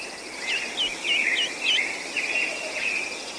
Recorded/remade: recorded